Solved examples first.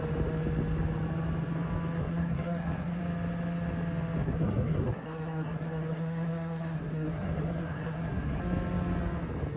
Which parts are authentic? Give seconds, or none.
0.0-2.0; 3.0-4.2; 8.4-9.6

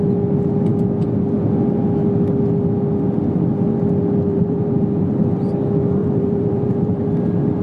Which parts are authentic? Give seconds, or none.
0.0-4.3; 5.2-6.0; 7.0-7.6

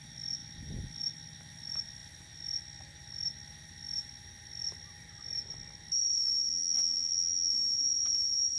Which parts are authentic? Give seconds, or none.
0.0-6.5; 7.5-8.6

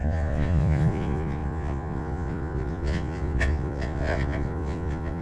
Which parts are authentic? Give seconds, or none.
none

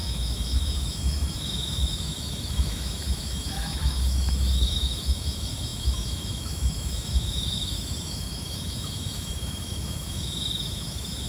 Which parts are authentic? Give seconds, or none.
none

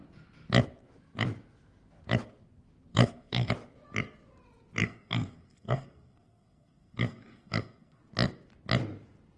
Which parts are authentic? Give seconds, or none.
0.0-2.9; 3.5-4.8; 8.0-9.4

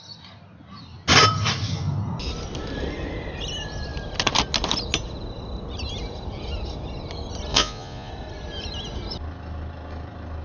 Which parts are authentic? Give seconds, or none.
0.0-7.5; 8.1-10.4

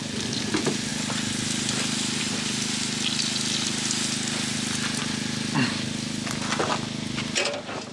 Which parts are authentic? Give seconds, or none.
0.0-7.9